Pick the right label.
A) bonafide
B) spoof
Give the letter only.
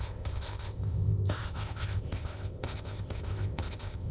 B